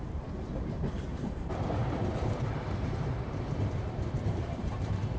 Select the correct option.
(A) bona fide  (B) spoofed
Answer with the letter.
B